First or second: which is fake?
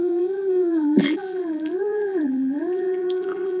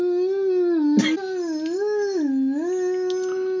first